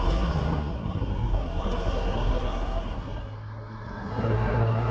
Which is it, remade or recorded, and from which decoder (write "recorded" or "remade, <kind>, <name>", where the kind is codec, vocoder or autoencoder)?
remade, codec, SNAC